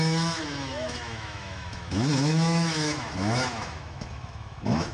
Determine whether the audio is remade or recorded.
remade